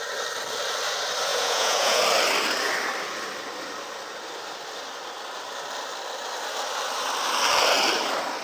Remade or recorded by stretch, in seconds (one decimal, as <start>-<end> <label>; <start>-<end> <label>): 0.0-1.3 recorded; 1.3-2.0 remade; 2.0-8.4 recorded